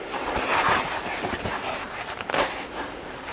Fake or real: real